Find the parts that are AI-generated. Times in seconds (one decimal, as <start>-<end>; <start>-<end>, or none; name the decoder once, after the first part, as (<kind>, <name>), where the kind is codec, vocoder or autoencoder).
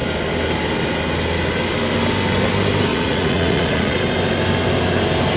2.9-4.0 (vocoder, Vocos)